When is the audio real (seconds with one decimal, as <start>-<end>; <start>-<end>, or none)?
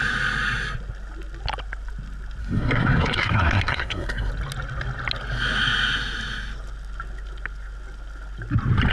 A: 0.0-2.4; 4.3-8.9